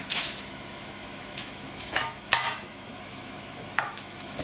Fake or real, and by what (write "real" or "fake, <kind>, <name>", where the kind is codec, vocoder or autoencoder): fake, autoencoder, DAC-VAE